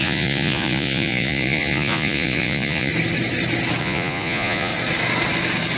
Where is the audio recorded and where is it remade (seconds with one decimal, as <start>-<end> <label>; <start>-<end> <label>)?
0.0-2.9 remade; 2.9-3.8 recorded; 3.8-4.7 remade; 4.7-5.8 recorded